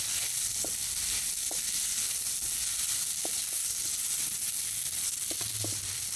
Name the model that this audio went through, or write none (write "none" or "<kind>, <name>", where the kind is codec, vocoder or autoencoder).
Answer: none